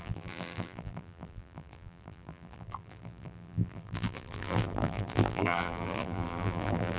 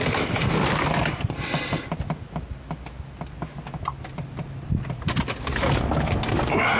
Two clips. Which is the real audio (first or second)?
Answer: second